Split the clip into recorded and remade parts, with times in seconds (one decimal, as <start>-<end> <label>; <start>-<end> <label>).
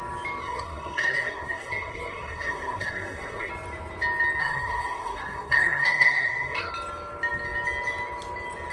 0.0-0.4 recorded; 0.4-3.5 remade; 3.5-4.4 recorded; 4.4-6.7 remade; 6.7-8.7 recorded